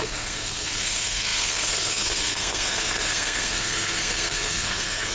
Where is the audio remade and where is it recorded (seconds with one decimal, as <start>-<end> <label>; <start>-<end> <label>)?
0.0-5.1 remade